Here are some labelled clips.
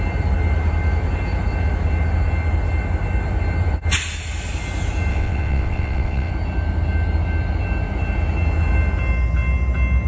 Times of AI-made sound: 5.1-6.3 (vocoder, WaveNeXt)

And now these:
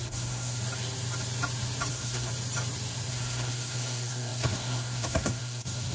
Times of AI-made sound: 0.0-0.6 (codec, SNAC); 1.9-2.3; 3.1-5.9

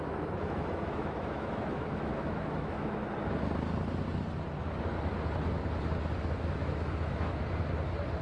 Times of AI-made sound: 0.0-3.0 (autoencoder, DAC-VAE); 6.5-7.4

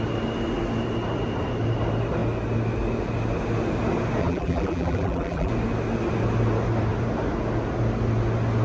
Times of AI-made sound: 4.2-5.5 (vocoder, BigVGAN v2)

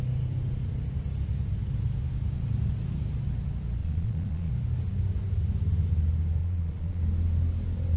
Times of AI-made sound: 3.8-4.5 (vocoder, Vocos); 6.4-7.0